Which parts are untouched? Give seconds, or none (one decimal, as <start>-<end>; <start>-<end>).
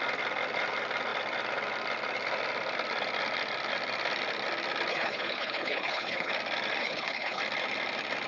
0.0-4.9; 6.3-6.8; 7.4-8.3